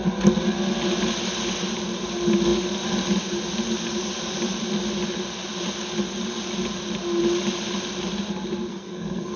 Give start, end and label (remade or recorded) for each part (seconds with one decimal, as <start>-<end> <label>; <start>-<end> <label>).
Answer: 0.0-8.7 recorded; 8.7-9.4 remade